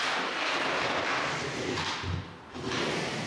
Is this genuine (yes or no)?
no